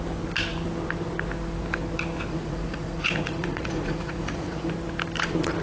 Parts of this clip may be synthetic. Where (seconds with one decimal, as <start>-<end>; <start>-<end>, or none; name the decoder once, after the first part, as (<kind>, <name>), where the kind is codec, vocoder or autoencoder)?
2.3-4.7 (vocoder, Vocos)